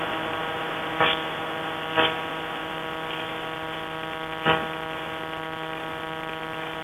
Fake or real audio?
real